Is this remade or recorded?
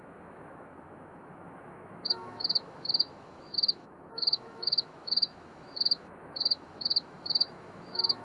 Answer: remade